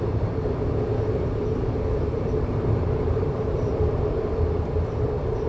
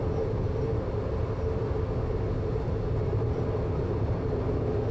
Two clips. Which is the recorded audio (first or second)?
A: second